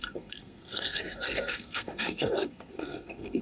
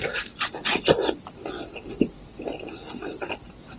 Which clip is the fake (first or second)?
first